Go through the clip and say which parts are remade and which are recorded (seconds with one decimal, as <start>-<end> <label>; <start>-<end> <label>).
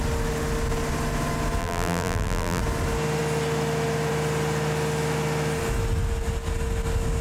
0.0-1.6 recorded; 1.6-2.6 remade; 2.6-7.2 recorded